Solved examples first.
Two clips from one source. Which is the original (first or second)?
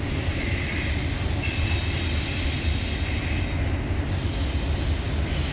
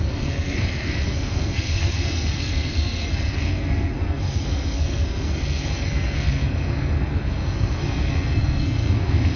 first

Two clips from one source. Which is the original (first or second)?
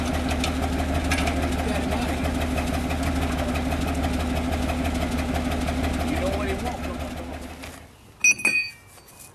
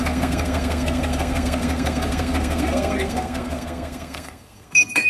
first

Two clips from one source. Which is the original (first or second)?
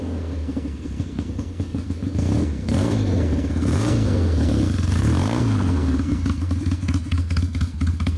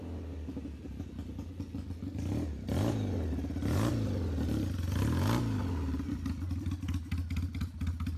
second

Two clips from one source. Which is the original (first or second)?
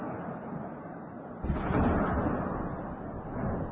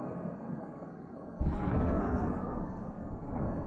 first